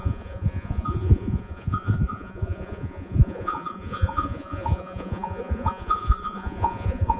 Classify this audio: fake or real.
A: fake